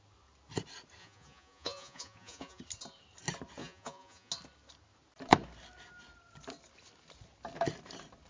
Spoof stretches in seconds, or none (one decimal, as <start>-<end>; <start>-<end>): 1.0-2.6; 3.6-4.3